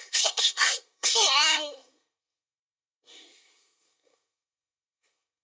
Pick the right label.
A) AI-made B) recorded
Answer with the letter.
A